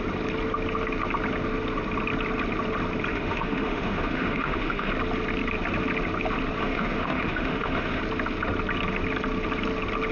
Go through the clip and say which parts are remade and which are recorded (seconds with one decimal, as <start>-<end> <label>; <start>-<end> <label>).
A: 0.0-3.1 recorded; 3.1-4.9 remade; 4.9-6.6 recorded; 6.6-8.0 remade; 8.0-10.1 recorded

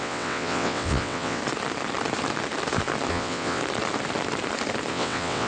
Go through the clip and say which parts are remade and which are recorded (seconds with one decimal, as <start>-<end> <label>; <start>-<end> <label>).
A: 0.0-1.4 remade; 1.4-3.1 recorded; 3.1-3.6 remade; 3.6-4.9 recorded; 4.9-5.5 remade

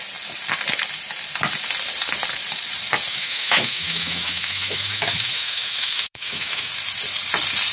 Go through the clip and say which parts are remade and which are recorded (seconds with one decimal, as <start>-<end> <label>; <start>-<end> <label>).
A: 0.0-3.1 recorded; 3.1-6.7 remade; 6.7-7.7 recorded